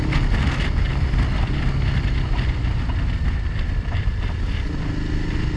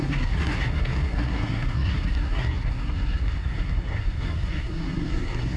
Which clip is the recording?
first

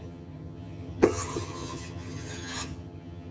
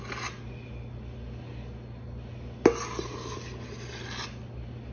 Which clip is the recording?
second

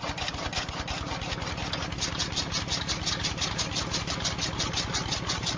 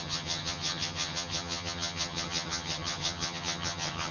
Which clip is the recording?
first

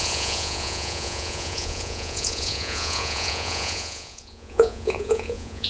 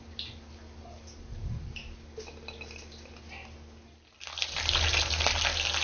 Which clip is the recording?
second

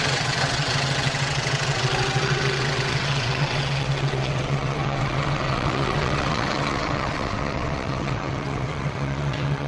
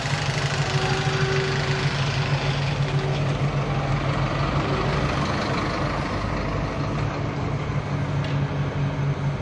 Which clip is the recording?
second